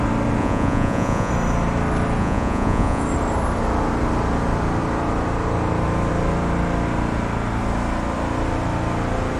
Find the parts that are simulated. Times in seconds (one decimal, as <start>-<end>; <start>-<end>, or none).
0.4-1.3; 2.2-3.0